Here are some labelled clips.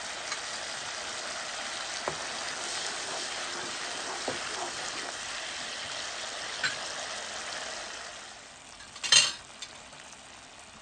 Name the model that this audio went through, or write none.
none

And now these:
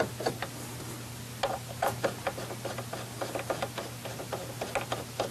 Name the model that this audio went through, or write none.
none